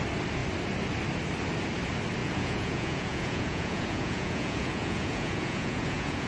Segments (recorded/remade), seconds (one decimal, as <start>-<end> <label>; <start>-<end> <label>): 0.0-2.2 recorded; 2.2-6.3 remade